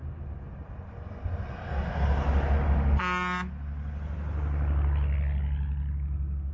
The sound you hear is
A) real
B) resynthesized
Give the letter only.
A